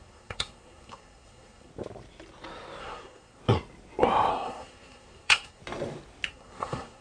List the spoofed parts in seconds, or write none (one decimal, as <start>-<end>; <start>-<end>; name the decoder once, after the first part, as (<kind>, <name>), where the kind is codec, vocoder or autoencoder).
0.0-1.7 (codec, SNAC); 2.8-3.4; 4.3-5.6; 6.3-7.0